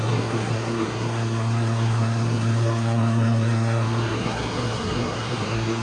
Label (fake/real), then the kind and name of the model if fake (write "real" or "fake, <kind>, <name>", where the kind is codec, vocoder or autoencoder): fake, codec, SNAC